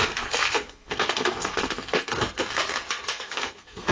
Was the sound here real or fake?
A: fake